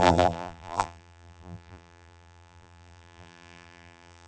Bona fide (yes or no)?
no